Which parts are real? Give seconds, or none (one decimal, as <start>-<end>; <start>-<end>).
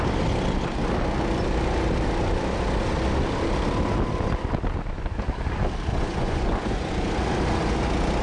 0.0-5.9; 6.9-8.2